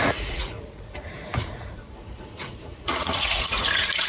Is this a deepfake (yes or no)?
yes